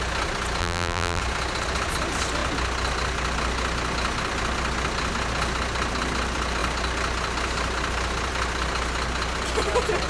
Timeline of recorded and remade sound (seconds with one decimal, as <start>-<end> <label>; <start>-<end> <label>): 0.0-0.6 recorded; 0.6-1.2 remade; 1.2-10.1 recorded